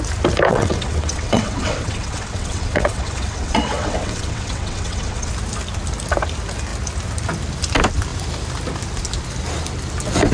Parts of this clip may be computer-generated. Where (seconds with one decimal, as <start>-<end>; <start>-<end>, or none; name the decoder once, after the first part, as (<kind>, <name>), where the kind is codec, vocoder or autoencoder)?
0.5-5.3 (vocoder, WaveNeXt)

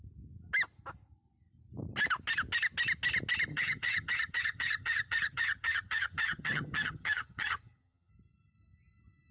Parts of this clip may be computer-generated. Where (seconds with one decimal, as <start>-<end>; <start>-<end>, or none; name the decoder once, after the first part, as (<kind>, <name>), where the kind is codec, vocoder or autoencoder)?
3.5-8.1 (vocoder, HiFi-GAN)

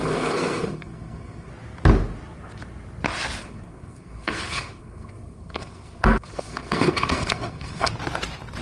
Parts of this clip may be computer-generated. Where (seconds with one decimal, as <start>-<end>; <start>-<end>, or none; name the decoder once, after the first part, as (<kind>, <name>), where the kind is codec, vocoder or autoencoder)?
0.0-1.5 (codec, SNAC); 3.4-7.9

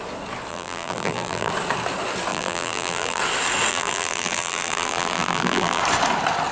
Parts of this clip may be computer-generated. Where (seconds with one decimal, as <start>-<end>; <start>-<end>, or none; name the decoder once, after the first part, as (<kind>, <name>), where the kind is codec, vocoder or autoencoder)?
0.5-1.5 (vocoder, BigVGAN v2); 2.3-3.2; 3.7-5.8

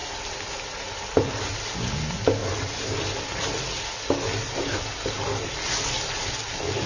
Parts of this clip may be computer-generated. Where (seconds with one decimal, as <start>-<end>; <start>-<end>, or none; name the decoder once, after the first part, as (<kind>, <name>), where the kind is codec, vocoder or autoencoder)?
none